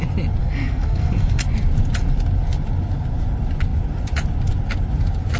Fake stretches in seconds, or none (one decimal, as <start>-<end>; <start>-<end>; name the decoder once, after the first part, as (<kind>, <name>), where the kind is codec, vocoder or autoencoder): 0.4-1.4 (codec, SNAC)